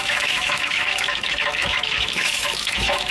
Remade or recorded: remade